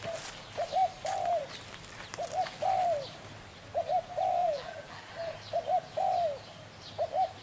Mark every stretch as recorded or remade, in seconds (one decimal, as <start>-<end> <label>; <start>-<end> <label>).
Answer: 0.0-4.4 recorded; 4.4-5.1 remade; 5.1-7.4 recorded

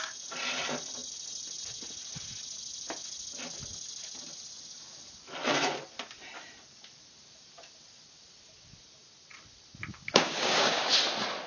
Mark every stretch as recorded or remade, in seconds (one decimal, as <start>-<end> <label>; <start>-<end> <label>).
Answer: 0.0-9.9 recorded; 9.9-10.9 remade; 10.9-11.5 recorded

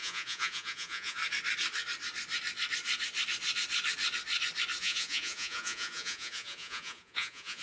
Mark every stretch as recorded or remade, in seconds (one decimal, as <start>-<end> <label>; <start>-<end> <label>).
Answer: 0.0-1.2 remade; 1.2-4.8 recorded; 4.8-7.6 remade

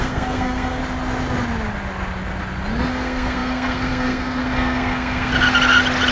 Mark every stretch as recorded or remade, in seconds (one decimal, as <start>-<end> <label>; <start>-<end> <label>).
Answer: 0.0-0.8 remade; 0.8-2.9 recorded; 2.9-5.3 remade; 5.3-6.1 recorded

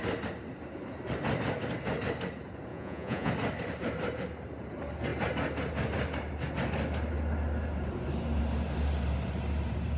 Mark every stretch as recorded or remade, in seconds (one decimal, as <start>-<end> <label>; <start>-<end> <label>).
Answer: 0.0-2.7 recorded; 2.7-3.3 remade; 3.3-10.0 recorded

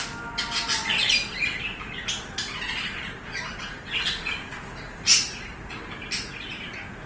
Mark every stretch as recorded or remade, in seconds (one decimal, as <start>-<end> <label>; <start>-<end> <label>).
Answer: 0.0-0.9 recorded; 0.9-5.2 remade; 5.2-7.1 recorded

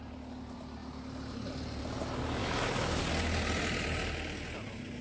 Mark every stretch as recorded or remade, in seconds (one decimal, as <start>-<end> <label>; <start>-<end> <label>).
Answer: 0.0-2.4 recorded; 2.4-3.0 remade; 3.0-5.0 recorded

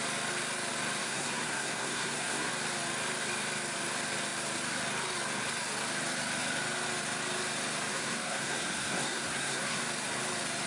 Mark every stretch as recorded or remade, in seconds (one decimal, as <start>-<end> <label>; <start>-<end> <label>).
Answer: 0.0-1.0 recorded; 1.0-2.5 remade; 2.5-7.9 recorded; 7.9-9.8 remade; 9.8-10.7 recorded